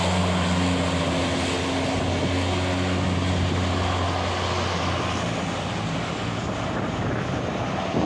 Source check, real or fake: real